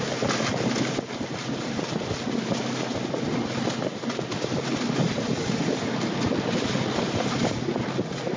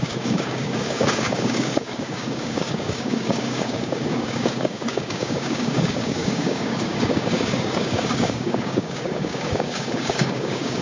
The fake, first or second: second